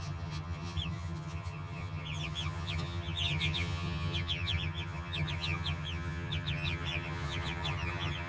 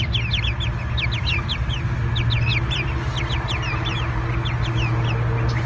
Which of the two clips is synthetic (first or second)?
first